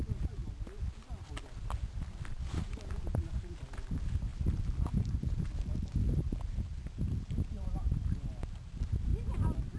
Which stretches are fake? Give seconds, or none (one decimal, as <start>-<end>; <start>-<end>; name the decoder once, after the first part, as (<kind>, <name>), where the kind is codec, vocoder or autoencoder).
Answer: 0.0-0.4 (vocoder, BigVGAN v2); 2.5-9.8